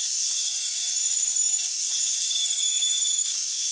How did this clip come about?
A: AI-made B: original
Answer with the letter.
A